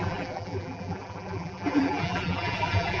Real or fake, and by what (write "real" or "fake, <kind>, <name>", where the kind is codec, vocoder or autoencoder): fake, vocoder, BigVGAN v2